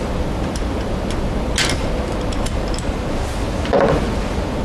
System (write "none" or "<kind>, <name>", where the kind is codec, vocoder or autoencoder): none